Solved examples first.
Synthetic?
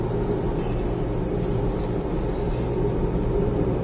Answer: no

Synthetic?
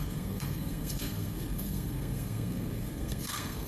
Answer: yes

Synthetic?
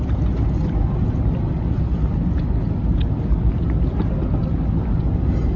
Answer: no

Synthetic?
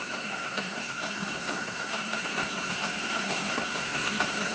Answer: yes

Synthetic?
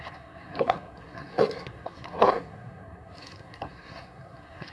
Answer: yes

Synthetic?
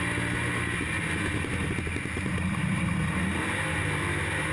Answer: no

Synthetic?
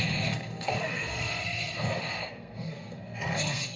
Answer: yes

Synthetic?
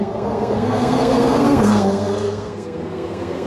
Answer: yes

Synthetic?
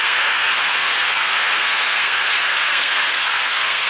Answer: yes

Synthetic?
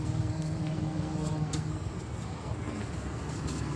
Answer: yes